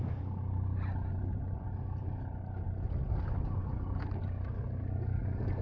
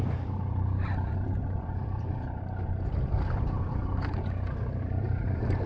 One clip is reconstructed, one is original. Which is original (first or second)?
first